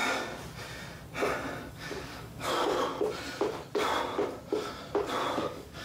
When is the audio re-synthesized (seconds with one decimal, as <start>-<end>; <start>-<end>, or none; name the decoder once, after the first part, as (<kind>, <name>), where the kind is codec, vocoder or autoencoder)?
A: 1.7-2.9 (codec, DAC); 5.3-5.8